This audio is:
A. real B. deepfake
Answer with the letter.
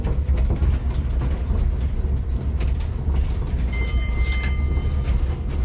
A